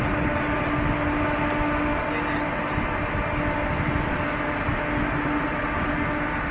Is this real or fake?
real